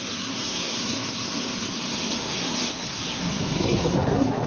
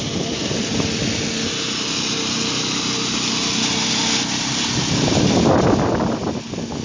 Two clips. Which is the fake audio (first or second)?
first